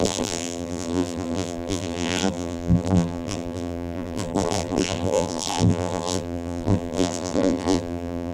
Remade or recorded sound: remade